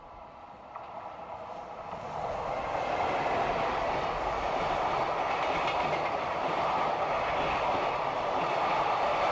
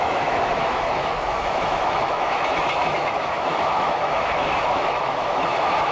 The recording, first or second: first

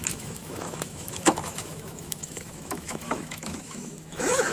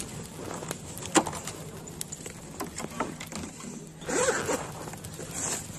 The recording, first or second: second